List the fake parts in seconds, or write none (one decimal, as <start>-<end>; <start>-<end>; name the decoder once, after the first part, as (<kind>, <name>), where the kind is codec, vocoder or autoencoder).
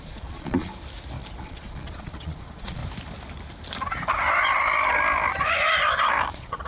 0.0-0.7 (vocoder, Vocos); 1.4-2.8; 6.3-6.7